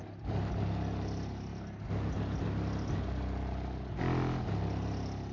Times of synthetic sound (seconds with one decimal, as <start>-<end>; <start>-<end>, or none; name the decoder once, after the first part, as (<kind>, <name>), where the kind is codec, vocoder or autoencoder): none